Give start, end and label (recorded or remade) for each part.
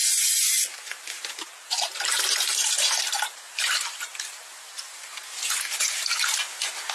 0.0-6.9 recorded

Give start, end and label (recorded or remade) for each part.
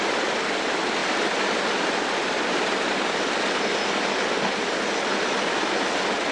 0.0-6.3 recorded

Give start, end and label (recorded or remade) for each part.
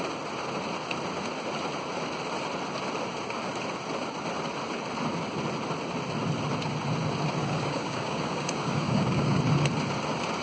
0.0-7.4 recorded; 7.4-9.4 remade; 9.4-10.4 recorded